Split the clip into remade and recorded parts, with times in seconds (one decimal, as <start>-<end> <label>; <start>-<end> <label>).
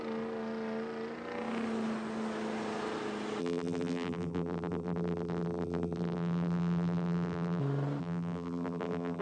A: 0.0-3.4 recorded; 3.4-7.6 remade; 7.6-8.0 recorded; 8.0-9.2 remade